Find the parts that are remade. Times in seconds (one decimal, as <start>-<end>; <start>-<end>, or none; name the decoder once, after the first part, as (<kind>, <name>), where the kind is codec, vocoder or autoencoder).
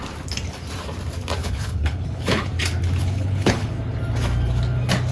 1.4-2.5 (codec, HILCodec); 3.0-3.7